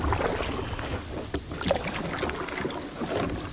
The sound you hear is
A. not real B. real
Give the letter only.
B